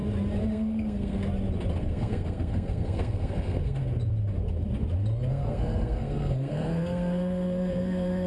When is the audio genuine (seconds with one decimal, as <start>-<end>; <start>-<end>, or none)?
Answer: 0.0-0.5; 1.2-1.8; 3.8-5.3